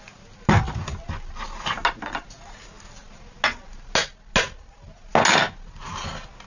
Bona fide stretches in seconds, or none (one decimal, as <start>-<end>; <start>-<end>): 0.0-6.5